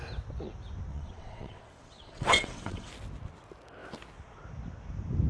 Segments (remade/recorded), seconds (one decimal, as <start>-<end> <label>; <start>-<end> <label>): 0.0-0.9 recorded; 0.9-2.9 remade; 2.9-5.3 recorded

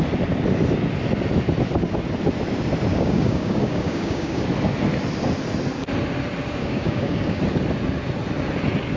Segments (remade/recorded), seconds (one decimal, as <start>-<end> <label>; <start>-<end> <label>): 0.0-2.9 recorded; 2.9-4.4 remade; 4.4-6.6 recorded; 6.6-7.4 remade; 7.4-9.0 recorded

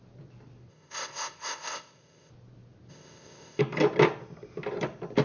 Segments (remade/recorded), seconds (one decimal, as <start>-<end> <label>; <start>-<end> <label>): 0.0-0.7 recorded; 0.7-2.3 remade; 2.3-2.9 recorded; 2.9-3.6 remade; 3.6-5.2 recorded